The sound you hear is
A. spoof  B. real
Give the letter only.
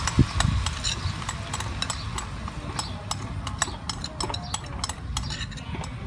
B